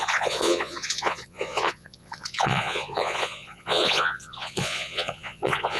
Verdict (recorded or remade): remade